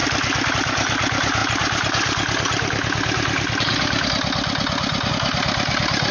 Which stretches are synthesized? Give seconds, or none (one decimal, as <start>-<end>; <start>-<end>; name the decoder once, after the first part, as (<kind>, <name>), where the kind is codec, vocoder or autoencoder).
none